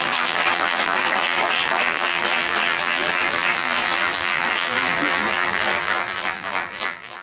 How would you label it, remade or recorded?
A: remade